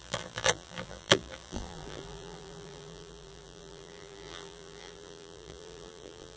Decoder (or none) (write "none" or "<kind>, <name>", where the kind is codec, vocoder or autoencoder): vocoder, BigVGAN v2